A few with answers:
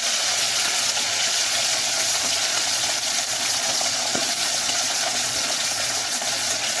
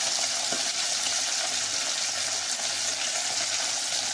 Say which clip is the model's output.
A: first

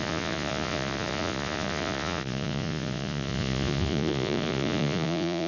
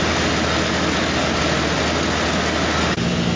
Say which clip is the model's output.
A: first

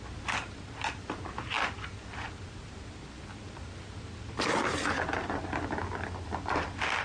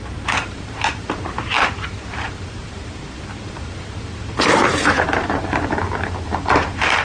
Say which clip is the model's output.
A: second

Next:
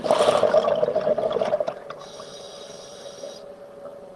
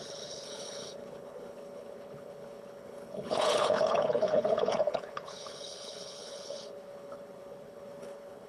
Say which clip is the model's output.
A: second